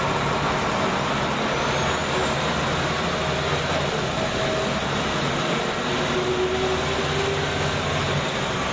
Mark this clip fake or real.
real